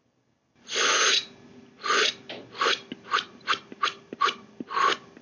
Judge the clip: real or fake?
real